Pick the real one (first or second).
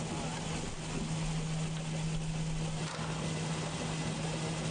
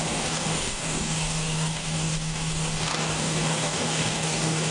first